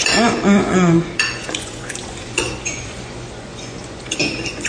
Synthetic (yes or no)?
yes